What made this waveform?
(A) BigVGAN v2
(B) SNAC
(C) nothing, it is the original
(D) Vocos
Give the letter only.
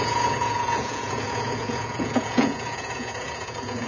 D